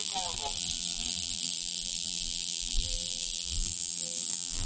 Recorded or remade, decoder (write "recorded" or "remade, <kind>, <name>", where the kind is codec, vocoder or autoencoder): remade, vocoder, BigVGAN v2